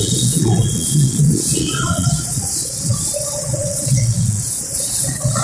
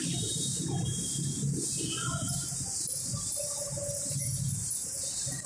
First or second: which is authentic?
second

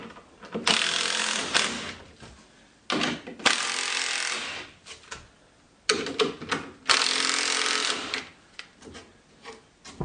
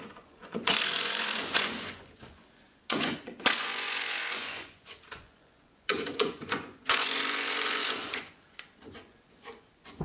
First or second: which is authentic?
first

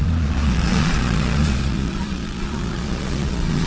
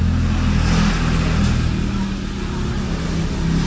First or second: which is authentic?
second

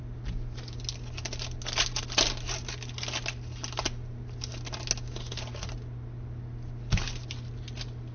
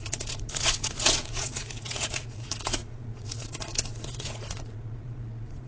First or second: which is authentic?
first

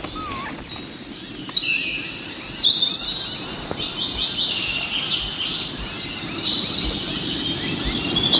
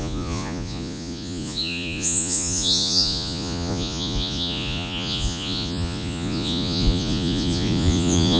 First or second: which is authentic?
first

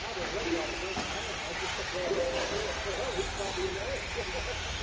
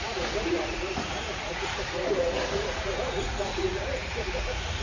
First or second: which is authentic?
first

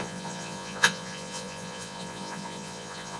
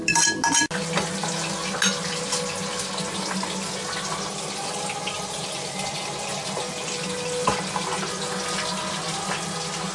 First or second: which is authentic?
second